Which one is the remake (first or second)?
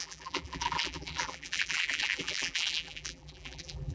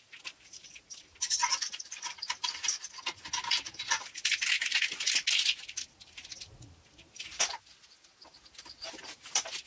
first